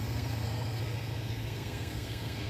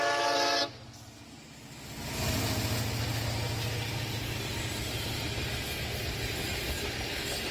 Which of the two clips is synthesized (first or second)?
first